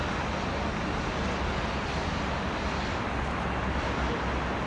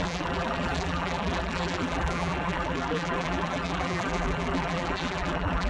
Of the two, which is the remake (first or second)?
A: second